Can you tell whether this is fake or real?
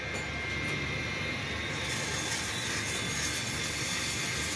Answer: real